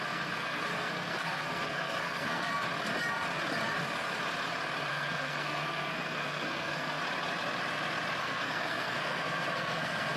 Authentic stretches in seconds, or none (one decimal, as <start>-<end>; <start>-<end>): 2.5-4.9; 7.0-8.2